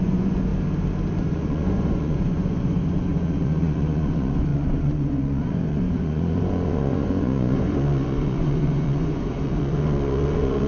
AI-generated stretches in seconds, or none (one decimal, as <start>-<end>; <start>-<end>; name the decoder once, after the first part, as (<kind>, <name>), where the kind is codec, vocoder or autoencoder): 0.0-0.5 (vocoder, Vocos); 1.2-10.7